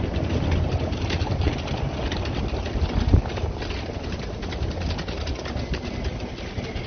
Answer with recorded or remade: recorded